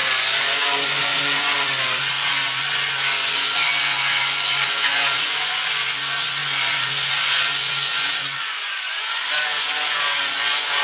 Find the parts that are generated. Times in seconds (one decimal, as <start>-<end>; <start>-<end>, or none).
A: 0.0-10.8